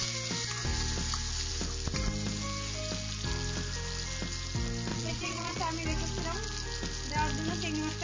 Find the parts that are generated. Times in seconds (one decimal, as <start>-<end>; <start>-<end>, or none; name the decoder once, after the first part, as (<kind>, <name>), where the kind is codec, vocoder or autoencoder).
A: 4.9-5.6 (vocoder, Vocos)